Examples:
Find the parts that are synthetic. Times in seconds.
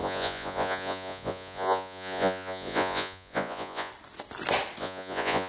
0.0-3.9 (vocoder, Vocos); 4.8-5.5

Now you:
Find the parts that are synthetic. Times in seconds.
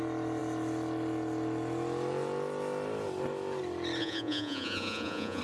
4.0-5.4 (vocoder, Vocos)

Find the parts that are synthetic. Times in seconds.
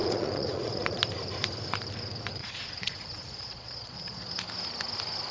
0.0-1.0 (vocoder, Vocos); 2.4-4.3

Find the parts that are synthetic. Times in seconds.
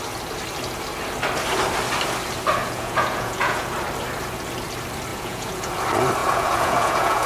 2.6-3.7 (vocoder, Vocos); 5.1-5.7; 6.2-7.3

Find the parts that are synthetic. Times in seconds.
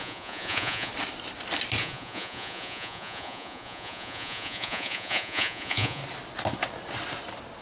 0.0-0.9 (vocoder, Vocos); 1.8-6.0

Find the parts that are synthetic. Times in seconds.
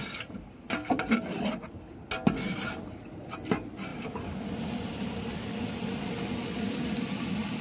none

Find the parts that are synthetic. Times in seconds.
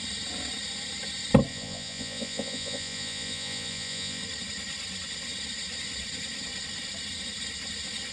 1.5-4.2 (vocoder, Vocos)